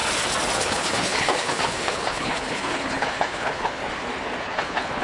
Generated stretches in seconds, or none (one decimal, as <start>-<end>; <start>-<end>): 0.6-3.8; 4.4-5.0